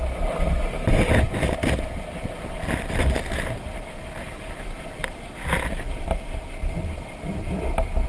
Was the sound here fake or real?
real